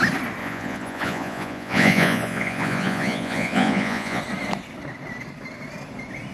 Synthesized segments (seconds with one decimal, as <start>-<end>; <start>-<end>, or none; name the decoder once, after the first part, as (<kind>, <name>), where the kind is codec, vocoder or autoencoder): 0.4-4.2 (vocoder, Vocos)